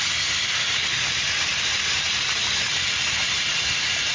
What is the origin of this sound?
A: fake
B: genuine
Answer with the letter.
B